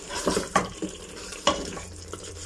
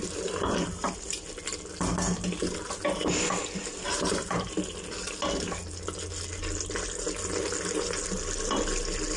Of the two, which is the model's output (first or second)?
first